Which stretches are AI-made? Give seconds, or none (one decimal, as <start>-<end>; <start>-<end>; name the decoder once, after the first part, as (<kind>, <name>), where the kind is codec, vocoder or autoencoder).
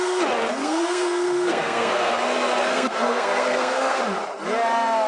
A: 0.6-2.1 (codec, SNAC); 2.7-4.0